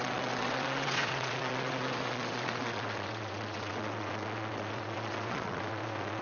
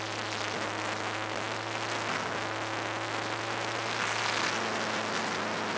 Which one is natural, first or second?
second